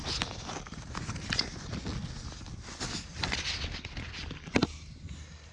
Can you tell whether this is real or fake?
real